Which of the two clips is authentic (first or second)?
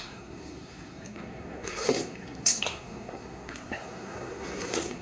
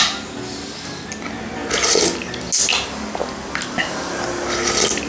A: second